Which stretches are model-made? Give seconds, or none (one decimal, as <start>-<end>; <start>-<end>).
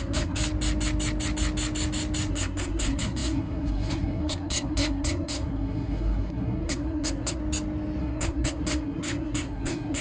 0.0-0.4; 2.3-7.4; 8.0-10.0